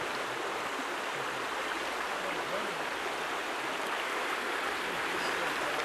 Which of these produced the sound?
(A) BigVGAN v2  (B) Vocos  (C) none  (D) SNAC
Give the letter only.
C